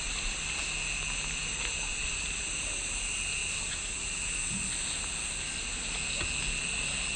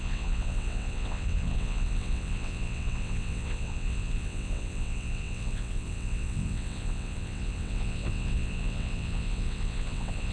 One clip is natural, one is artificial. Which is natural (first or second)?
first